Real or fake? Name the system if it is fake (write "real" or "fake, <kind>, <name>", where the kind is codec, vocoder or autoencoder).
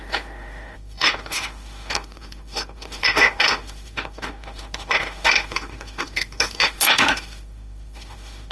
fake, autoencoder, DAC-VAE